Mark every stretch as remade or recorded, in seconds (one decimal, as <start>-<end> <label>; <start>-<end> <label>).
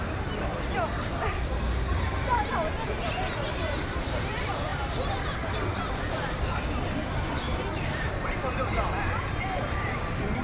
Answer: 0.0-10.4 remade